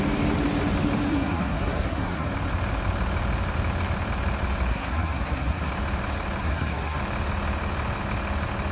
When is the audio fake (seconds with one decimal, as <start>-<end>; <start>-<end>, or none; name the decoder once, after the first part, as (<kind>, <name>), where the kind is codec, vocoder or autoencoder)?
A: 1.1-2.3 (codec, SNAC); 4.7-5.7; 6.4-7.0